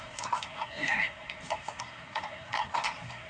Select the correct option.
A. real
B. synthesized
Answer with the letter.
B